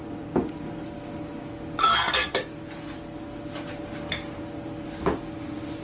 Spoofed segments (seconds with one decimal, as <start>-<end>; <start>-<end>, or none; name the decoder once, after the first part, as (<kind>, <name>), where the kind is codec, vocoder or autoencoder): 1.8-2.3 (codec, SNAC)